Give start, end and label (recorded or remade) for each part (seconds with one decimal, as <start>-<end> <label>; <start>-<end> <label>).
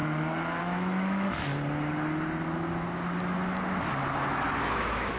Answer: 0.0-0.6 recorded; 0.6-1.5 remade; 1.5-4.6 recorded; 4.6-5.2 remade